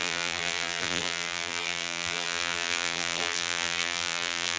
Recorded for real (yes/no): no